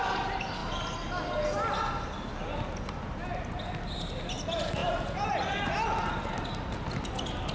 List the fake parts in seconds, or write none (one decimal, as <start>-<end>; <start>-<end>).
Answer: none